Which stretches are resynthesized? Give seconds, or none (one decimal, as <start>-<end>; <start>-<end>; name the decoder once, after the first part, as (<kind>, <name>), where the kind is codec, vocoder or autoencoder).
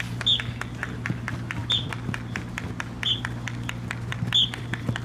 none